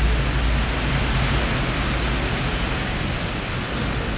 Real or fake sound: real